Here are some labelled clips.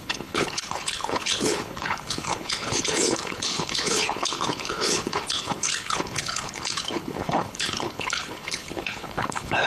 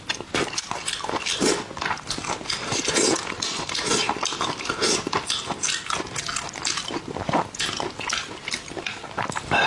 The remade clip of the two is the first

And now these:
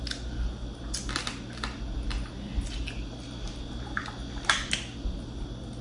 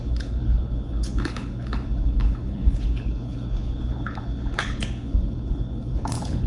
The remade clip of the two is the second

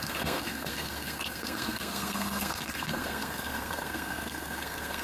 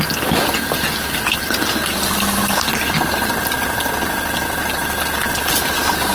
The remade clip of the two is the first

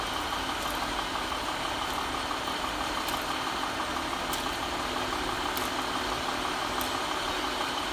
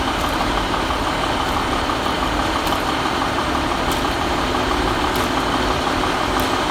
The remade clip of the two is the second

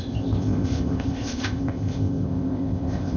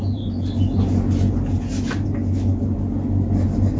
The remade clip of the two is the first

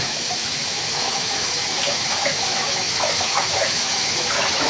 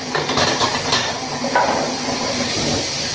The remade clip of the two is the first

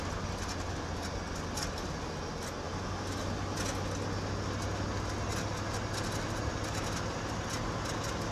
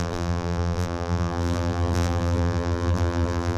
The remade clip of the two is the second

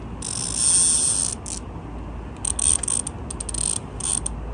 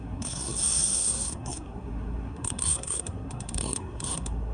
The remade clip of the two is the second